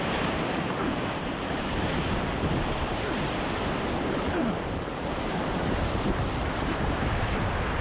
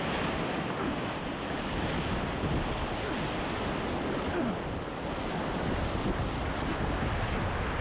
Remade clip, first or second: first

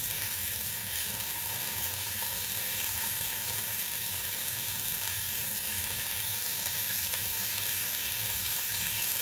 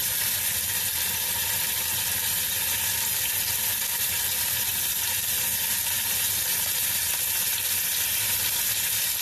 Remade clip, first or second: first